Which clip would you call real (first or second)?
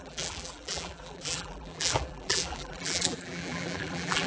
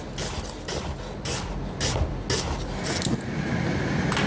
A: second